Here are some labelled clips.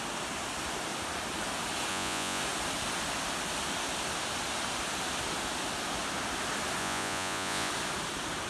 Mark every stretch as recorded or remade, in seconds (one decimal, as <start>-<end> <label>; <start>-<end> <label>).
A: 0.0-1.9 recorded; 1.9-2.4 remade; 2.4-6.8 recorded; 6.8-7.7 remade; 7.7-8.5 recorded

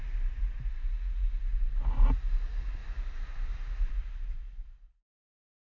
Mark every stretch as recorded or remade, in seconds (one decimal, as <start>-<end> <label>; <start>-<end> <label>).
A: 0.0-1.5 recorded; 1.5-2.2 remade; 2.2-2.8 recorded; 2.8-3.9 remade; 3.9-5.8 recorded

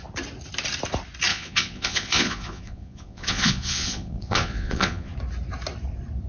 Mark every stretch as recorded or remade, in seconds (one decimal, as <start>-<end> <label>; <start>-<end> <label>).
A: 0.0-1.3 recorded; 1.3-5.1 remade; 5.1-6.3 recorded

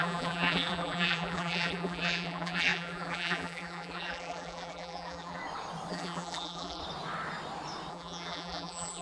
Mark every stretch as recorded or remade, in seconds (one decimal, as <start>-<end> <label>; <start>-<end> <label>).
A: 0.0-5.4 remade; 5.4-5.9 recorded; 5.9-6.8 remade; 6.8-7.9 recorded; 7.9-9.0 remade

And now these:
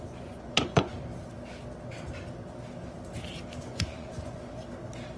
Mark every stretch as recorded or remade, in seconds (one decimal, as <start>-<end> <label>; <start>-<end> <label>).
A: 0.0-0.9 remade; 0.9-3.6 recorded; 3.6-4.6 remade; 4.6-5.2 recorded